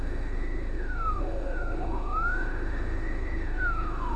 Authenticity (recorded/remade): remade